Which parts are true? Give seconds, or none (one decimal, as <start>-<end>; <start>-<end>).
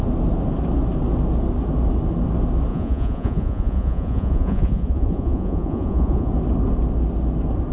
0.0-2.7; 6.3-7.7